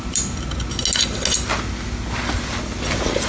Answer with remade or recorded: recorded